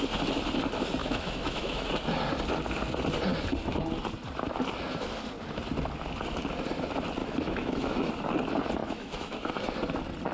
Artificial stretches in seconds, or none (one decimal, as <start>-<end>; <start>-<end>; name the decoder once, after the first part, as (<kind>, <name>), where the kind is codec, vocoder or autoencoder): 1.0-1.9 (autoencoder, DAC-VAE); 7.2-8.1; 8.8-9.5